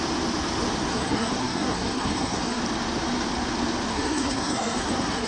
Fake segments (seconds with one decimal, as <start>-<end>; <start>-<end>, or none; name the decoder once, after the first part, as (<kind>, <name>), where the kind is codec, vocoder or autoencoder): 0.9-2.6 (codec, SNAC); 3.9-5.3